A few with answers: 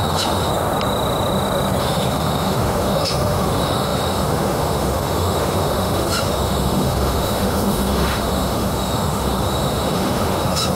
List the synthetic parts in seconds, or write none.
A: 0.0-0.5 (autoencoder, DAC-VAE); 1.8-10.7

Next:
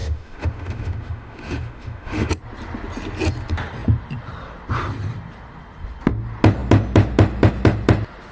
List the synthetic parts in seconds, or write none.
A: 0.0-2.3 (autoencoder, DAC-VAE)

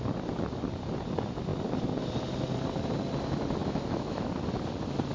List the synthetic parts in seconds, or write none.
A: 3.6-4.3 (autoencoder, DAC-VAE)

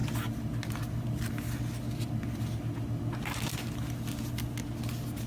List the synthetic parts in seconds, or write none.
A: none

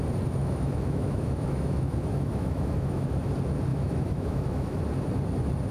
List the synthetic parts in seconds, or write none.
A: 0.4-3.3 (autoencoder, DAC-VAE); 3.7-4.8

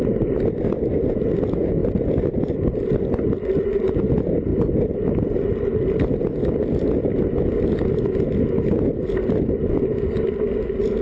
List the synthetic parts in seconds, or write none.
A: none

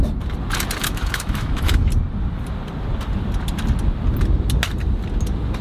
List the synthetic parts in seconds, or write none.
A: 0.8-1.9 (autoencoder, DAC-VAE)